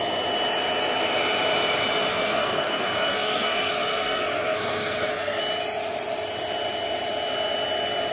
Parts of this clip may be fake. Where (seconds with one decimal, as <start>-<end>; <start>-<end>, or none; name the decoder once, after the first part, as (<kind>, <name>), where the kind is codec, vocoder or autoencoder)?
2.1-5.4 (codec, SNAC)